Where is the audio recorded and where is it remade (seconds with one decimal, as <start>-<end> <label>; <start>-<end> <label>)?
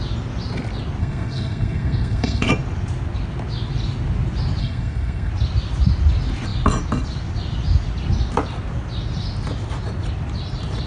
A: 0.0-1.0 recorded; 1.0-2.5 remade; 2.5-4.6 recorded; 4.6-5.3 remade; 5.3-10.9 recorded